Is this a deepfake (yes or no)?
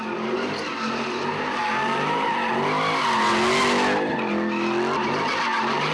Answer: no